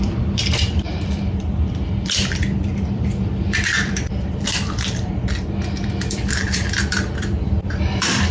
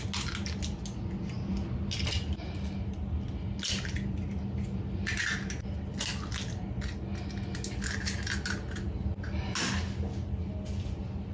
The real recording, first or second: second